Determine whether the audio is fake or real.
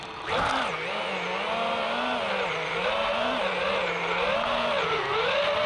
real